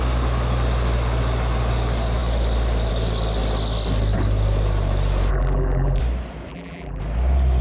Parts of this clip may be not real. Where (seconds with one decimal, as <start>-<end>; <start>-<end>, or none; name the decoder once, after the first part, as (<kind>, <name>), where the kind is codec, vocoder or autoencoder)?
5.3-6.0 (vocoder, BigVGAN v2); 6.5-7.0

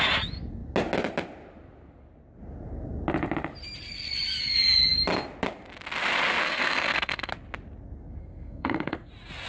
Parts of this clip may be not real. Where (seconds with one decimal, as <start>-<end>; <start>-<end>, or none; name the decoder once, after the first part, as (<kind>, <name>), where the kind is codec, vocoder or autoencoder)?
6.4-7.3 (codec, SNAC); 8.2-9.1

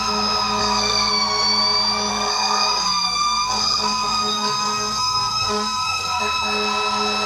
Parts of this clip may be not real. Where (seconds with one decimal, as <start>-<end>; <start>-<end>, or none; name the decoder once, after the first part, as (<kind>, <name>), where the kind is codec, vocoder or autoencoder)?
0.6-1.1 (codec, SNAC); 2.1-6.2

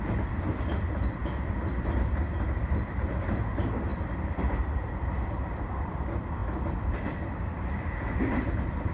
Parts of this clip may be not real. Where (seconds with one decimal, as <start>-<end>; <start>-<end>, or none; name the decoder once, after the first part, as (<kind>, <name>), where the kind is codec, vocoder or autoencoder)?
0.0-1.2 (vocoder, BigVGAN v2); 2.6-8.9

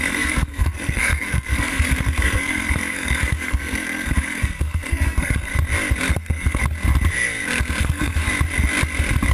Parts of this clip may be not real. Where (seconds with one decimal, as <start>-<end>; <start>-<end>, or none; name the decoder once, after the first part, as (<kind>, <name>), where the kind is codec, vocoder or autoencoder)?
0.0-5.5 (codec, SNAC); 6.1-6.6; 7.8-8.2

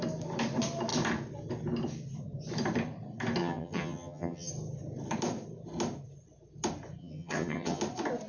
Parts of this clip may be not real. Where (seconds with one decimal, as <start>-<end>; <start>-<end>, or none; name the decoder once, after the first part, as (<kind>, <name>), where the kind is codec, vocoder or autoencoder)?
3.4-4.5 (vocoder, HiFi-GAN); 7.0-7.8